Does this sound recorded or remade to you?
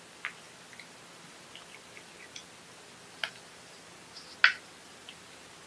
recorded